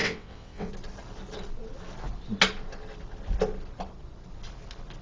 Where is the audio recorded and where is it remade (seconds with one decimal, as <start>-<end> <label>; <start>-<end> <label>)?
0.0-0.7 remade; 0.7-5.0 recorded